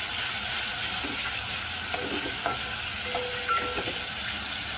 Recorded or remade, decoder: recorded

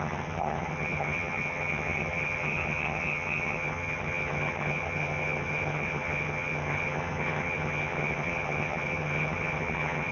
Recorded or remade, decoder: remade, vocoder, HiFi-GAN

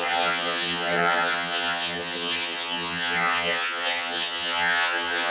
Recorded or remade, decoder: remade, vocoder, HiFi-GAN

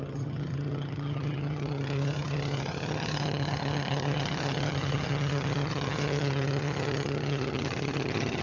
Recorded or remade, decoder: remade, vocoder, HiFi-GAN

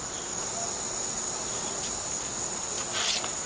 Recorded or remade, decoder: recorded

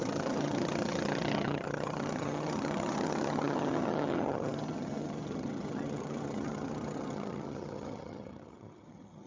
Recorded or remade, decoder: remade, vocoder, HiFi-GAN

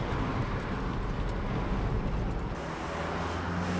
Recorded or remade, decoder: recorded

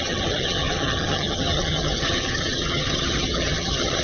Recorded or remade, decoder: remade, vocoder, HiFi-GAN